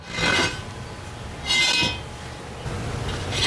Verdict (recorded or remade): recorded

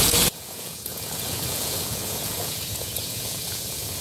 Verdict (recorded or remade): remade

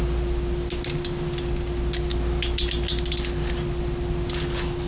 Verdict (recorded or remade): recorded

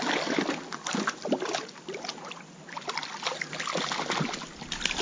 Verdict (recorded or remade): recorded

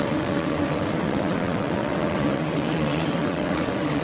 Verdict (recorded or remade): remade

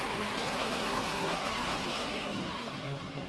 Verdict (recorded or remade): remade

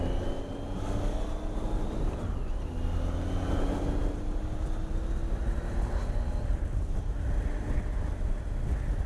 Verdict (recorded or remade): recorded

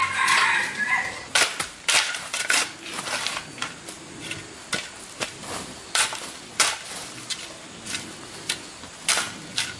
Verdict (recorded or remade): recorded